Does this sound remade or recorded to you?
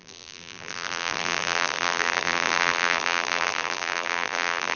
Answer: remade